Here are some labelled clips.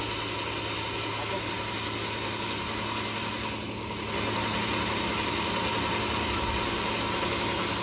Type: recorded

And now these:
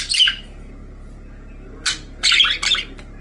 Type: recorded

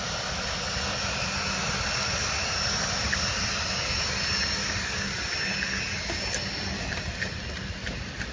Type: recorded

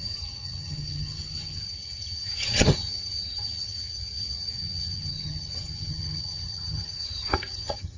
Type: remade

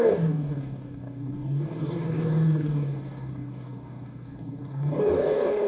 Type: remade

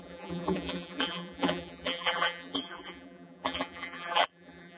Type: remade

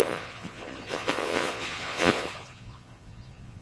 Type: remade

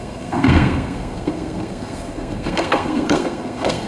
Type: remade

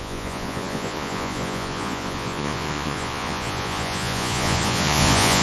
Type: remade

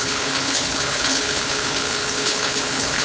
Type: remade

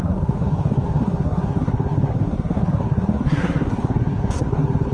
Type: remade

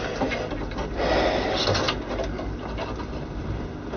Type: recorded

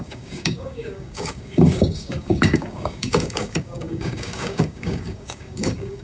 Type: remade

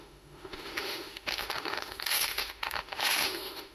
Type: remade